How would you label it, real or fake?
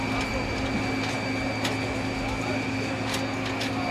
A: real